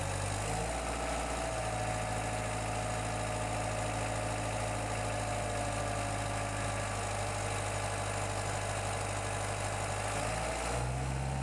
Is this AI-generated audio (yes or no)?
no